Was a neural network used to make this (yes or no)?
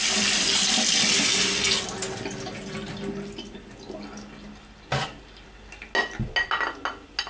no